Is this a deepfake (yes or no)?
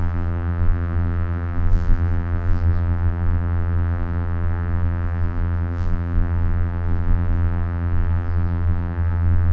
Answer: yes